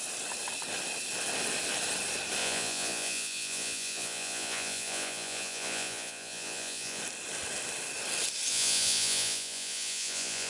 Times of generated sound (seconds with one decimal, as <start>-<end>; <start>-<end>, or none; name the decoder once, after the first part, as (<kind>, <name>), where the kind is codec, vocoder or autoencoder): 2.4-7.0 (vocoder, Vocos); 8.5-10.5